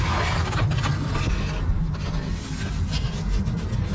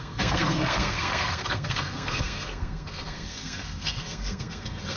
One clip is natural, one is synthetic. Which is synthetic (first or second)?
second